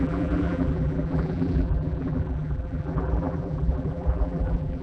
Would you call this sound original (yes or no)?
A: no